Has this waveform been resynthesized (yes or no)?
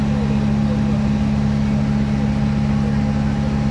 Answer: no